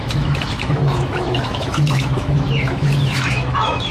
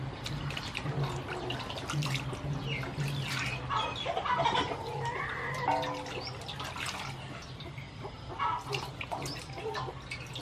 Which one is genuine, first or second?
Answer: second